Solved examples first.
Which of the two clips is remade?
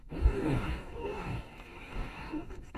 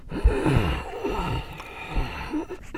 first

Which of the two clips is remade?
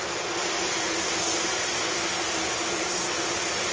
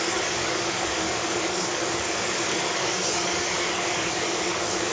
second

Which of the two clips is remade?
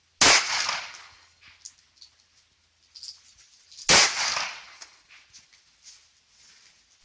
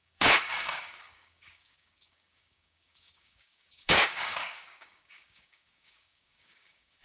second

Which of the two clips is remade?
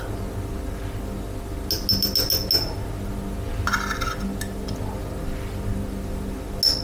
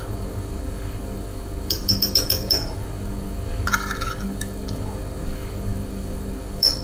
second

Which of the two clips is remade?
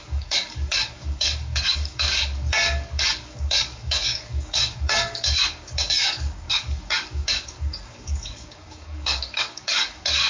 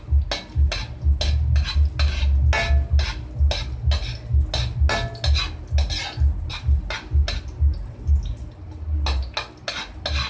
first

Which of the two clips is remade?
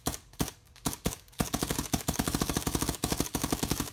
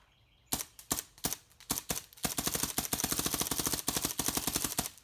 first